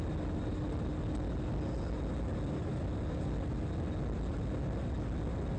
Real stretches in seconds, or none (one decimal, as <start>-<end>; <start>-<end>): 0.0-5.6